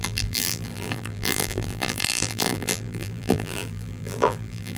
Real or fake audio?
fake